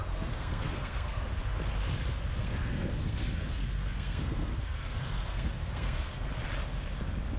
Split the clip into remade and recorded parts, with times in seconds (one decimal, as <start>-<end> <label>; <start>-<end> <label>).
0.0-1.3 remade; 1.3-2.3 recorded; 2.3-6.3 remade; 6.3-7.4 recorded